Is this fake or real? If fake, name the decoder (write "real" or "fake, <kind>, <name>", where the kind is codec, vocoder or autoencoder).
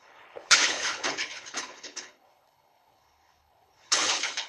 fake, codec, HILCodec